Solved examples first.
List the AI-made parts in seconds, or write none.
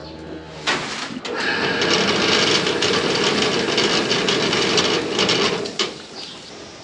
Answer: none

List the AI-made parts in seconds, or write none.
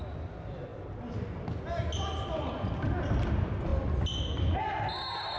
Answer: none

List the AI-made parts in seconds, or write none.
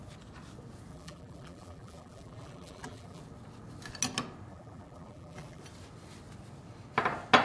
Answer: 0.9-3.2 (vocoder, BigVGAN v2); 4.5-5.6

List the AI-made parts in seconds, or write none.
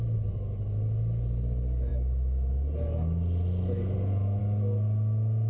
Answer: none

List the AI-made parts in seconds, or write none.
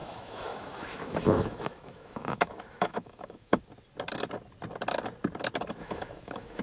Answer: 0.0-3.6 (autoencoder, DAC-VAE); 5.8-6.6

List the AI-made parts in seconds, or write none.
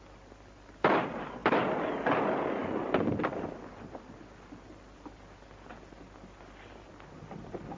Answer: none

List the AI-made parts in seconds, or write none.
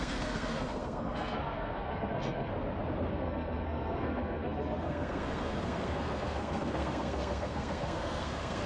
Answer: 0.0-2.5 (codec, SNAC); 3.1-8.7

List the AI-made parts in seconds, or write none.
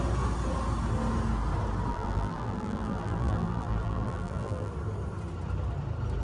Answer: 1.9-4.7 (vocoder, BigVGAN v2)